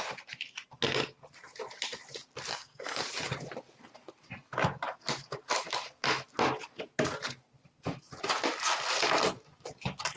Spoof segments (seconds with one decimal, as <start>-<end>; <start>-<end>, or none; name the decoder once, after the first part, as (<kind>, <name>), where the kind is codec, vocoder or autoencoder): 2.5-3.0 (codec, SNAC)